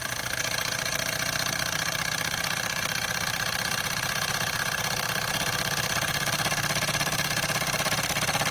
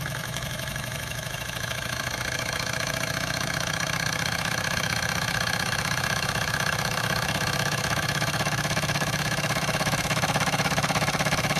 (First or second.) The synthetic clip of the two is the second